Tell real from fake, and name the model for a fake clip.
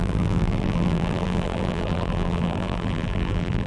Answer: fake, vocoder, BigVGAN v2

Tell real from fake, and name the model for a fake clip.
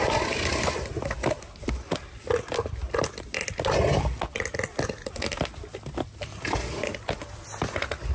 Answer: real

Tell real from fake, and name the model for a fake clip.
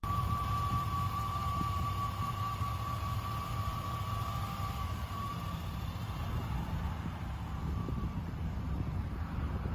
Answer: fake, vocoder, BigVGAN v2